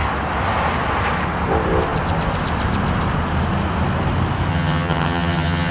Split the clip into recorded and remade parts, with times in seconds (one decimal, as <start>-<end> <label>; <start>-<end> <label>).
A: 0.0-4.5 recorded; 4.5-5.7 remade